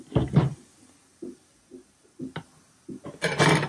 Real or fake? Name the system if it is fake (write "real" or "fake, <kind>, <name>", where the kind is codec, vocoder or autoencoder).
real